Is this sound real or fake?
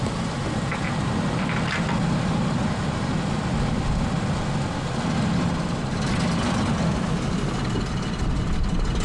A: real